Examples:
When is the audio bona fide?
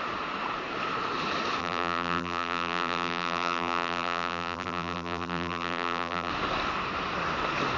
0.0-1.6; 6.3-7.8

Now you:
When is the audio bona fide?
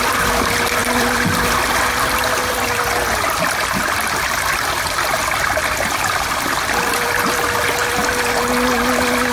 0.0-9.3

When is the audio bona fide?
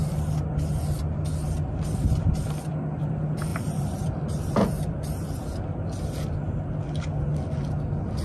0.0-3.5; 4.6-8.2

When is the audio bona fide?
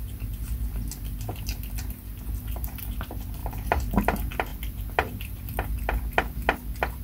0.0-3.4; 3.9-7.0